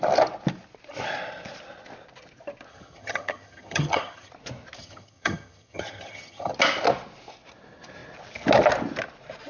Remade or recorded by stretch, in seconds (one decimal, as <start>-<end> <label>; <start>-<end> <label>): 0.0-2.7 recorded; 2.7-4.3 remade; 4.3-4.8 recorded; 4.8-6.5 remade; 6.5-9.5 recorded